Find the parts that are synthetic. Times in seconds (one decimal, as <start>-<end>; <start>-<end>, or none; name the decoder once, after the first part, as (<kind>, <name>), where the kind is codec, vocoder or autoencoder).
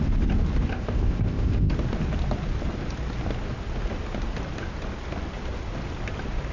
0.7-1.7 (codec, ZipCodec)